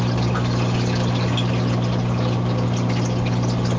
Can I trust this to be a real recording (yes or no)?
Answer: yes